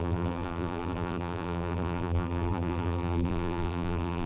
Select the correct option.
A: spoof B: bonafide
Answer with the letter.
A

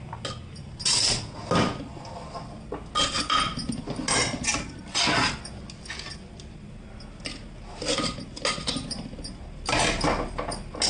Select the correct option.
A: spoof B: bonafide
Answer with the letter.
B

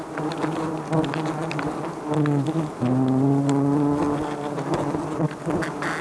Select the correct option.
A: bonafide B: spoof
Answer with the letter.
A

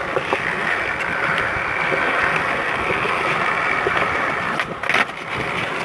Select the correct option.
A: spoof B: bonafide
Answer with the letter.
B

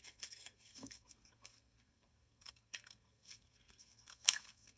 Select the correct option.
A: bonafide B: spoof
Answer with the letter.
B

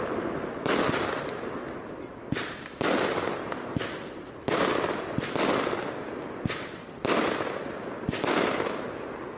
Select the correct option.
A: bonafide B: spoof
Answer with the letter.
A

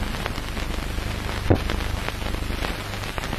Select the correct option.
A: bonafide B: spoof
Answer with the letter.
A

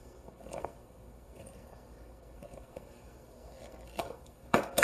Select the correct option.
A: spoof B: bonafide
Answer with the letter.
A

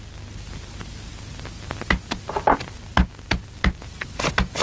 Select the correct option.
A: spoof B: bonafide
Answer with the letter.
B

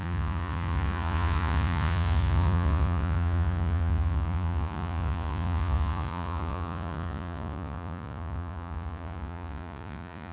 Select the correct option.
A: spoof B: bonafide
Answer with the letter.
A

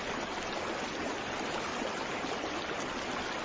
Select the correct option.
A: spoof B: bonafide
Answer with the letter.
B